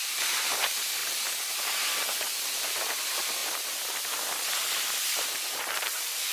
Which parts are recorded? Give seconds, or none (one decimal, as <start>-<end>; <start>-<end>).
0.0-6.3

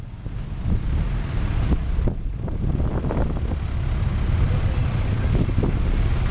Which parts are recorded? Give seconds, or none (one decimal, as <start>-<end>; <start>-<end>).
0.0-1.8; 2.7-4.1; 5.0-6.3

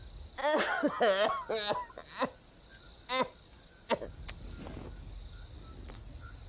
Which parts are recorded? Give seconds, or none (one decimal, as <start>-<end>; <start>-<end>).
0.0-6.5

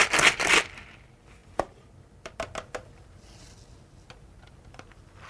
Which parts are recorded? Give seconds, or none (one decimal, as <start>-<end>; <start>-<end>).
0.0-5.3

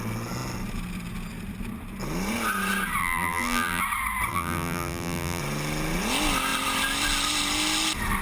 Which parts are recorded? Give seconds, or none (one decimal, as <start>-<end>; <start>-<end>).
0.0-3.0; 3.8-4.3; 5.4-8.2

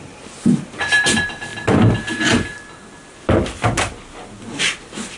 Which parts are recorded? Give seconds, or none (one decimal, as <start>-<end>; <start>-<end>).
1.5-4.6